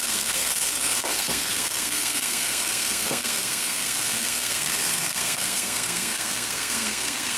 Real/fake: fake